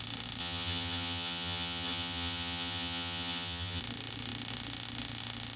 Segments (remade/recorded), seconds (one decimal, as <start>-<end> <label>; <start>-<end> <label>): 0.0-0.4 recorded; 0.4-3.8 remade; 3.8-5.6 recorded